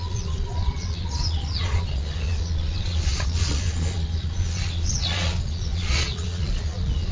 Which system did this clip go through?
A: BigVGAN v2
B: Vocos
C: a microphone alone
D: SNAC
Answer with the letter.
B